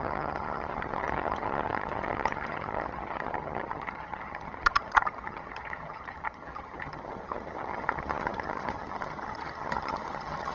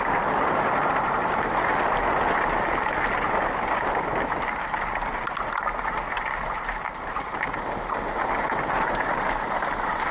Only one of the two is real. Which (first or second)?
second